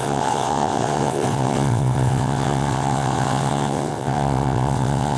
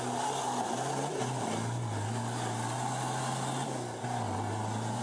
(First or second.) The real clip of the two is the second